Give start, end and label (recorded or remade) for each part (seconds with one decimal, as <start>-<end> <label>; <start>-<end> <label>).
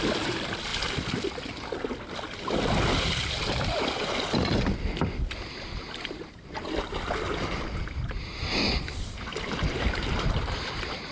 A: 0.0-9.3 recorded; 9.3-10.7 remade; 10.7-11.1 recorded